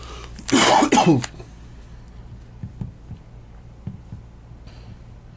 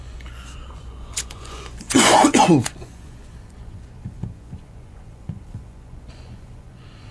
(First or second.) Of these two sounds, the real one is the first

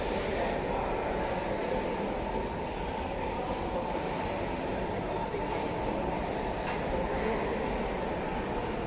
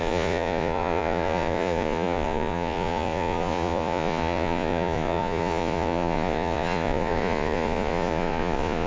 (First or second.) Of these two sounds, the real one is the first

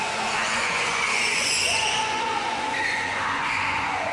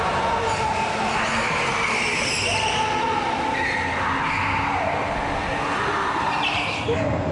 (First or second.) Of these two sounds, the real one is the second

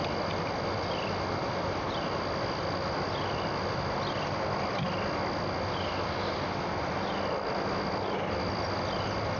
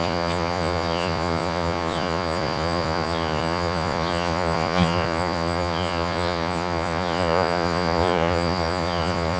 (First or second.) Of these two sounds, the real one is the first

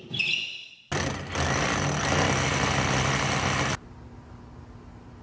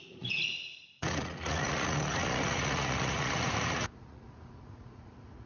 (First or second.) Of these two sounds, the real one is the first